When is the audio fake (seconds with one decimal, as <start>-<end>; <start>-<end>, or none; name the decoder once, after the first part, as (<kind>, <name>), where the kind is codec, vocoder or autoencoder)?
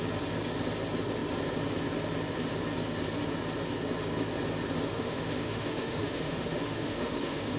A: 4.9-7.6 (autoencoder, DAC-VAE)